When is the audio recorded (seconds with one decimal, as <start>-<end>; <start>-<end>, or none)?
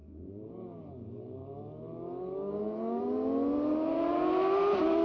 3.0-5.0